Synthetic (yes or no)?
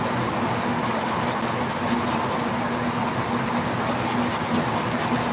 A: no